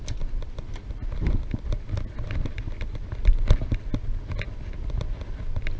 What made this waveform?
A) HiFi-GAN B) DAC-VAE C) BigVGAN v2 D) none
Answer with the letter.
D